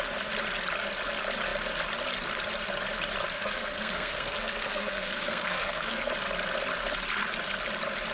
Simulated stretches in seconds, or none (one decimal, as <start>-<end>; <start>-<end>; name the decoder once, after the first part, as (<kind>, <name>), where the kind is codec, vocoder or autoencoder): 3.3-6.0 (codec, SNAC)